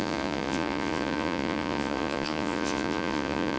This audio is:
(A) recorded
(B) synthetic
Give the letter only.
B